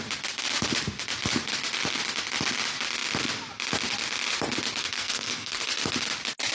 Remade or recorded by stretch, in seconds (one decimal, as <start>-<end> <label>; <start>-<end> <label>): 0.0-4.8 recorded; 4.8-5.6 remade; 5.6-6.5 recorded